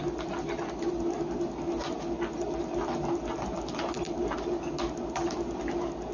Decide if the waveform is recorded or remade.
recorded